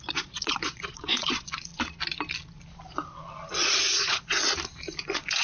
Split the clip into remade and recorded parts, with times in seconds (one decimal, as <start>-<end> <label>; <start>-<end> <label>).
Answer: 0.0-1.7 remade; 1.7-3.5 recorded; 3.5-4.4 remade; 4.4-5.0 recorded; 5.0-5.4 remade